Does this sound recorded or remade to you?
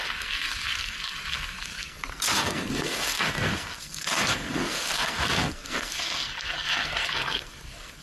remade